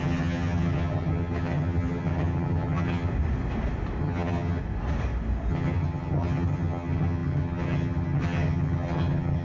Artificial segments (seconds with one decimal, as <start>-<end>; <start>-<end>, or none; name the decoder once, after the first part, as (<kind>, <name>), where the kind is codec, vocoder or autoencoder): 0.0-3.1 (vocoder, HiFi-GAN); 4.0-4.6; 5.5-9.4